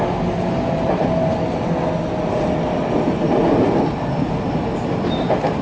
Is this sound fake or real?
real